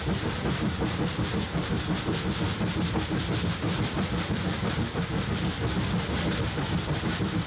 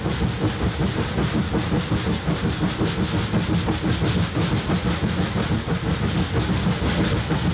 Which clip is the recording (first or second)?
second